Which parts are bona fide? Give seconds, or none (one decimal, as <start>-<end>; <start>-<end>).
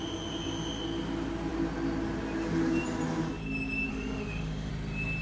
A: 0.0-3.9; 4.7-5.2